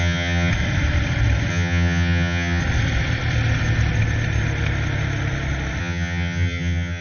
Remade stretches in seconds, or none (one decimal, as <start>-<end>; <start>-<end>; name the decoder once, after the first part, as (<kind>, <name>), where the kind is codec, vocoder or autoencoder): 0.0-0.5 (vocoder, HiFi-GAN); 1.5-2.6; 5.8-7.0